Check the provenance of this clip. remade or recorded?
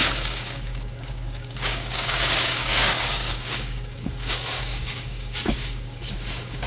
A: remade